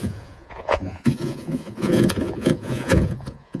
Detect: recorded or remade remade